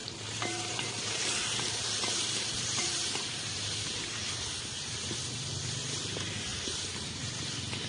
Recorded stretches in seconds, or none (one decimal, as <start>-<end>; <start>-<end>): 4.1-6.5; 7.2-7.9